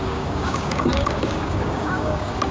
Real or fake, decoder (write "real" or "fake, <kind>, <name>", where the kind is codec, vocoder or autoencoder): fake, codec, DAC